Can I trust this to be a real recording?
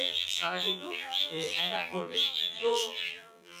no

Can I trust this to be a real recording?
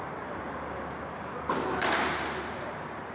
yes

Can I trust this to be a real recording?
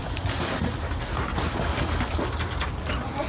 yes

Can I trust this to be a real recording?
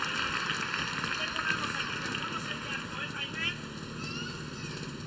yes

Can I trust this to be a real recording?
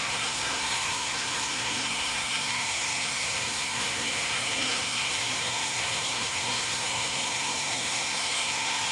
no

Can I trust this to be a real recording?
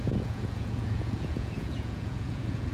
no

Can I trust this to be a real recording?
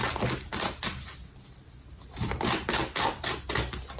yes